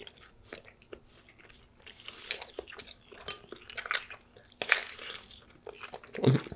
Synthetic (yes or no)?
no